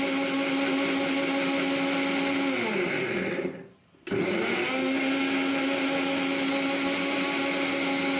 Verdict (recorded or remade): recorded